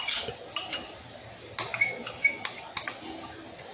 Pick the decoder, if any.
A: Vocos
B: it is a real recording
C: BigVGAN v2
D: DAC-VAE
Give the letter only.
B